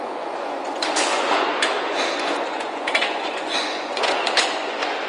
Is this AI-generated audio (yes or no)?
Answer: yes